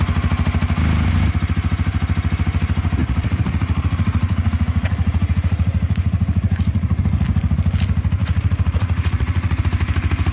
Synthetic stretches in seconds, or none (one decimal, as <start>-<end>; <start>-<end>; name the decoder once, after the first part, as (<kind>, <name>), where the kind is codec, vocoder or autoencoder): 3.0-7.0 (vocoder, Vocos); 8.2-9.6

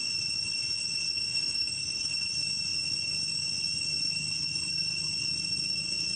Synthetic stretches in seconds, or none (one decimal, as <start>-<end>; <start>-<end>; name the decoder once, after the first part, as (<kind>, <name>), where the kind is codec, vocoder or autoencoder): 1.1-2.0 (autoencoder, DAC-VAE)

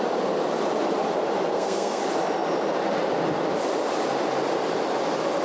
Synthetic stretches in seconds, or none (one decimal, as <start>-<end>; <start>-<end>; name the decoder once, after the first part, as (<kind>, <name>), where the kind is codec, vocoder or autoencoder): 1.5-2.0 (codec, SNAC)

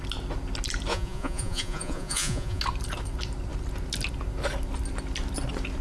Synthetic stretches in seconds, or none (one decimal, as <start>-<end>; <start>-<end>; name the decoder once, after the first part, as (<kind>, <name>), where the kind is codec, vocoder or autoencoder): 0.9-2.6 (vocoder, Vocos)

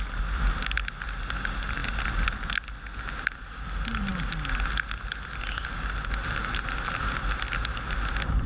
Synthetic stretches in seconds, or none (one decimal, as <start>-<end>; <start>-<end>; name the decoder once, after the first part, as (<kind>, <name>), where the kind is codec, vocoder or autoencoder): none

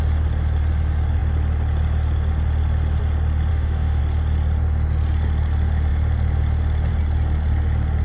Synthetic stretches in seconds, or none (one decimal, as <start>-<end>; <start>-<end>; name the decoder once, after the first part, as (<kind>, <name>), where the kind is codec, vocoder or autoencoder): 3.5-4.0 (autoencoder, DAC-VAE)

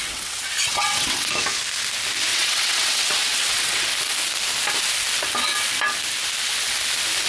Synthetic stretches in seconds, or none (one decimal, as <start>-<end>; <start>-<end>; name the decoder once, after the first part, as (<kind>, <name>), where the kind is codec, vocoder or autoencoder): 0.0-1.3 (vocoder, WaveNeXt); 2.3-3.9

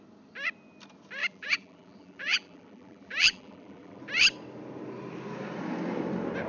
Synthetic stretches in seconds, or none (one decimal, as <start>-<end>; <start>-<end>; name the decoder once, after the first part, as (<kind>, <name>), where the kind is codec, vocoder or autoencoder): 1.2-4.0 (vocoder, BigVGAN v2)